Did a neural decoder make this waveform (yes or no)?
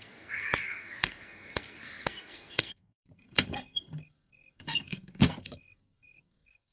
yes